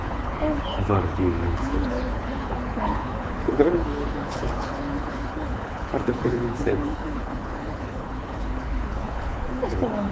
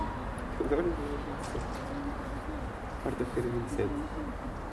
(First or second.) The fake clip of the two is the first